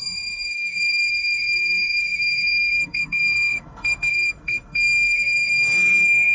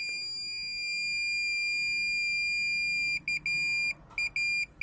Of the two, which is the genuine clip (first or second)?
second